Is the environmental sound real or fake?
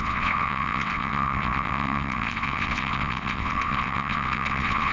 fake